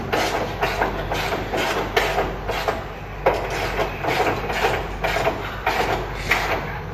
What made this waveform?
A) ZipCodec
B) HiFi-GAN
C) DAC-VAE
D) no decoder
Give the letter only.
D